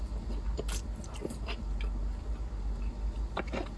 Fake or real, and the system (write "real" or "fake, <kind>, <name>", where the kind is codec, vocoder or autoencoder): real